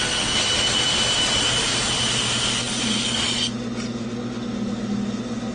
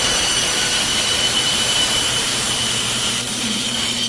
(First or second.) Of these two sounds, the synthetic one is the second